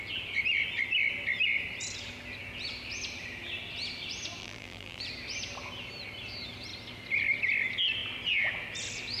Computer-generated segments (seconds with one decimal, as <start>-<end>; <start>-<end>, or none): 4.4-5.0